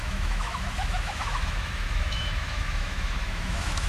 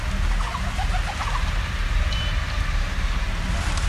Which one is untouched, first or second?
second